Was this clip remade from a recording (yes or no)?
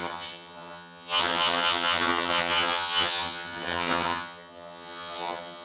yes